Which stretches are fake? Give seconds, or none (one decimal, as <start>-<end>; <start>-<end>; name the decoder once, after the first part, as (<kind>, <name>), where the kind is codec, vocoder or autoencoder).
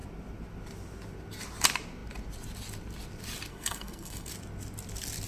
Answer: 3.5-4.3 (codec, SNAC)